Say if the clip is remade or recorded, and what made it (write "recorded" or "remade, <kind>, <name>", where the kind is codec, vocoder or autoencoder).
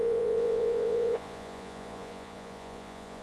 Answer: remade, vocoder, Vocos